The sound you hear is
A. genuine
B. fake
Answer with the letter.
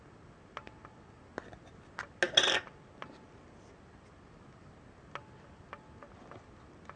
A